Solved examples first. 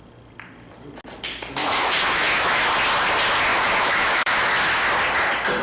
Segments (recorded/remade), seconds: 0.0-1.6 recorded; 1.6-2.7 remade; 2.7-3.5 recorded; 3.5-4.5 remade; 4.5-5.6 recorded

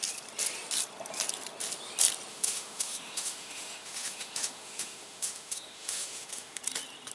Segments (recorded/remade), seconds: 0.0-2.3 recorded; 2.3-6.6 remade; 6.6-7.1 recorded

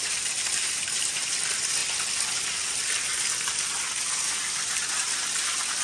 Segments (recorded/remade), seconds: 0.0-5.8 recorded

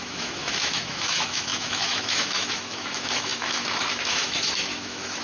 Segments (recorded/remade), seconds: 0.0-5.2 remade

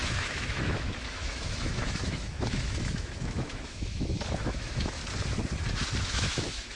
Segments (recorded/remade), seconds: 0.0-5.0 remade; 5.0-6.0 recorded; 6.0-6.8 remade

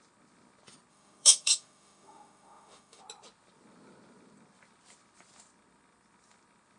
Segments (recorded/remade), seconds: 0.0-0.9 recorded; 0.9-3.0 remade; 3.0-6.8 recorded